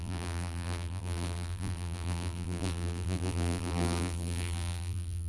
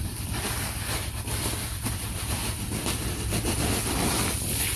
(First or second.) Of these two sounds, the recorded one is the second